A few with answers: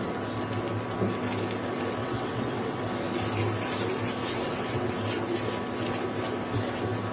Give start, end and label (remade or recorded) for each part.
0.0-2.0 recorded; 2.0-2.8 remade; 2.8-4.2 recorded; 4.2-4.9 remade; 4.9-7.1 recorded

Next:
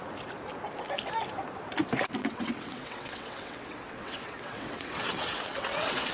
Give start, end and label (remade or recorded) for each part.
0.0-2.2 recorded; 2.2-6.1 remade

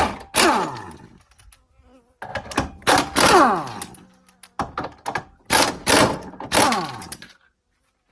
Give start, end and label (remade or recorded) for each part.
0.0-8.1 recorded

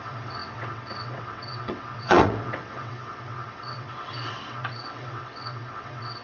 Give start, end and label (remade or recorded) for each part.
0.0-6.2 remade

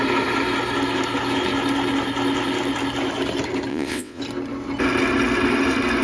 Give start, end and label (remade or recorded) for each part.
0.0-3.7 recorded; 3.7-4.2 remade; 4.2-6.0 recorded

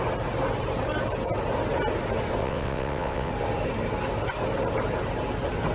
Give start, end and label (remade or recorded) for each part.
0.0-2.4 recorded; 2.4-3.3 remade; 3.3-5.7 recorded

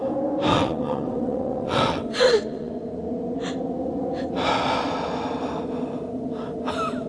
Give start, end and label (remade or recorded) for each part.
0.0-0.5 recorded; 0.5-2.7 remade; 2.7-7.1 recorded